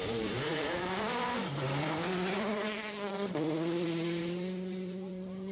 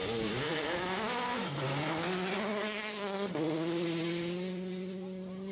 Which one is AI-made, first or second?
first